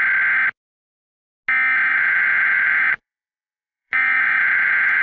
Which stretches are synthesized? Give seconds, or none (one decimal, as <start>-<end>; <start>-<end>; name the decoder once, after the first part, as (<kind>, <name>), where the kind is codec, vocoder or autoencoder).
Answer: 1.9-5.0 (vocoder, Vocos)